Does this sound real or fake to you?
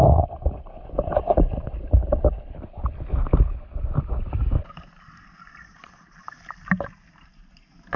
real